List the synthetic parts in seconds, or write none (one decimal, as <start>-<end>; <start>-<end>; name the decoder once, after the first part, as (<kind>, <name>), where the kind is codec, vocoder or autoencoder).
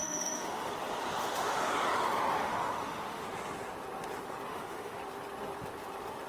0.0-0.7 (autoencoder, DAC-VAE); 1.2-1.7; 2.3-3.2; 4.5-5.0